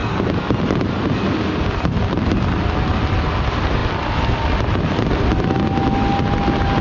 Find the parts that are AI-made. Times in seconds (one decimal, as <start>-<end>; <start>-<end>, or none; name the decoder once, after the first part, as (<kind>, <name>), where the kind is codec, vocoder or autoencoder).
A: none